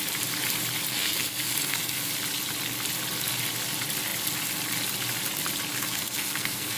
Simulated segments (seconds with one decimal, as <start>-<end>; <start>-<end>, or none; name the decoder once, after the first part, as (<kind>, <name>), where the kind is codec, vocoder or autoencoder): 0.9-2.1 (codec, SNAC); 5.8-6.8